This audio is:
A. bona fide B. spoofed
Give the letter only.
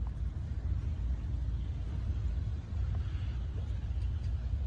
A